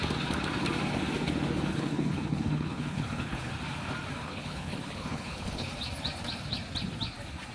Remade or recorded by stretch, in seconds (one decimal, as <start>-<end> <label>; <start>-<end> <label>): 0.0-1.7 recorded; 1.7-3.5 remade; 3.5-4.2 recorded; 4.2-5.7 remade; 5.7-7.5 recorded